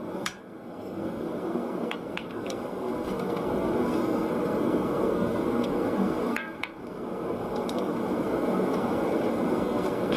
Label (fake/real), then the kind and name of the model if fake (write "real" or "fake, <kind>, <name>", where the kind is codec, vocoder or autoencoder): fake, codec, SNAC